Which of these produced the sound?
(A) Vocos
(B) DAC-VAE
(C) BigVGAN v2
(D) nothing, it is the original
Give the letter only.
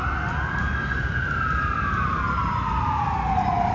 D